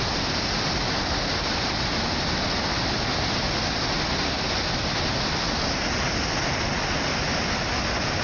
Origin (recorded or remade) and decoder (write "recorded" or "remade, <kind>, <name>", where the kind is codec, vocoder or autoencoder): recorded